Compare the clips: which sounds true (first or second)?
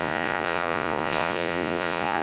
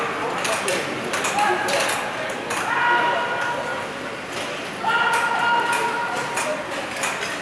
second